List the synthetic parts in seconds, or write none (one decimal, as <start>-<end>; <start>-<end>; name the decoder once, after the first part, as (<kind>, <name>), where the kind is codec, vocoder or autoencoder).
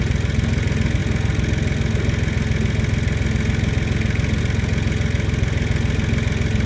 none